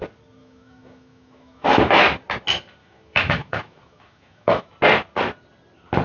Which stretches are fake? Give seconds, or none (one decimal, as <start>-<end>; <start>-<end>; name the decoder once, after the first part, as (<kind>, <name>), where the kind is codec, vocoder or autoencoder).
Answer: 0.4-1.9 (autoencoder, DAC-VAE); 2.8-4.7

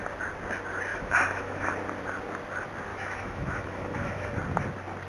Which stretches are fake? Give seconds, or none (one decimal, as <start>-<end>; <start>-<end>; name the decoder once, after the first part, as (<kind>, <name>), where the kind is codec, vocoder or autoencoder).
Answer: 0.9-1.7 (autoencoder, DAC-VAE); 2.9-4.3

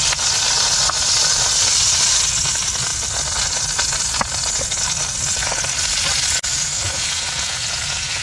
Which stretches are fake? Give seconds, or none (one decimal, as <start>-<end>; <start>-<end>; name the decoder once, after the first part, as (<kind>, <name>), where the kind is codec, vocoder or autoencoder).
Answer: none

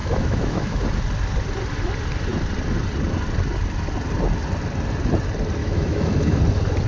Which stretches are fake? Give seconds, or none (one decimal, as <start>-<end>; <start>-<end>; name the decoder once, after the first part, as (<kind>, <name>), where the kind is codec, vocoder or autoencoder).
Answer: 0.0-0.8 (autoencoder, DAC-VAE); 5.6-6.4

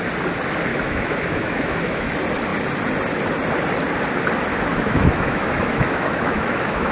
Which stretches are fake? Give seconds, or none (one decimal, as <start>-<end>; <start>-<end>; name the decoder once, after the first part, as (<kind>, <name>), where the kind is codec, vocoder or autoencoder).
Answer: 0.7-2.1 (autoencoder, DAC-VAE); 4.5-6.9

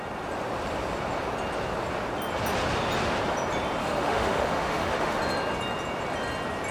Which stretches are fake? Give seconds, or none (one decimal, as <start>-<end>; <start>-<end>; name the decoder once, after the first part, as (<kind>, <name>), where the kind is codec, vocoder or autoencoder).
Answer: 3.8-5.2 (autoencoder, DAC-VAE)

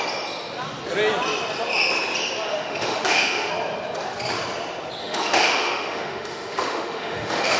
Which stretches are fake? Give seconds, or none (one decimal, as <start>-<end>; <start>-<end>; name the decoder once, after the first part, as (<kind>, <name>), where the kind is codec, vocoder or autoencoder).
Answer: 2.5-3.5 (autoencoder, DAC-VAE); 5.0-7.6